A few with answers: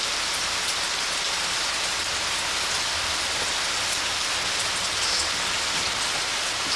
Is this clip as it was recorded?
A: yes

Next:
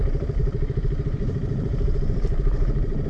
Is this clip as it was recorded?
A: no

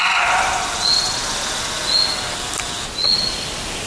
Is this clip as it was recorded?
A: yes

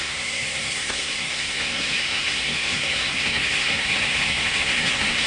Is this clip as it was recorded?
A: no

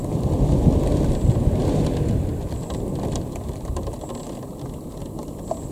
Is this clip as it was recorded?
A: yes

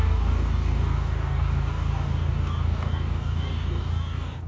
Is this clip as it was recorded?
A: no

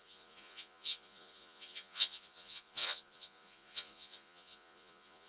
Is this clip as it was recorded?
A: no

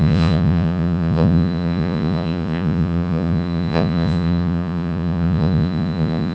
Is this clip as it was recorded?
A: no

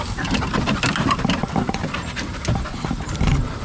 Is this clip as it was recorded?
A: yes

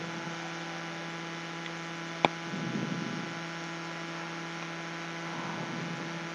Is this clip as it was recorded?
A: yes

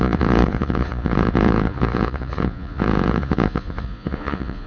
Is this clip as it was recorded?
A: no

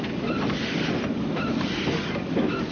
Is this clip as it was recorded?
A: yes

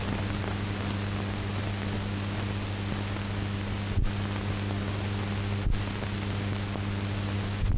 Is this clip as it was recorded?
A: yes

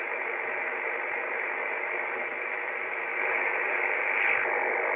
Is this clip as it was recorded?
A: yes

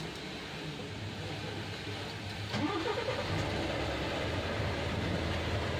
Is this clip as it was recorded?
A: yes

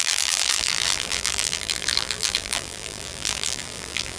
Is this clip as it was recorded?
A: no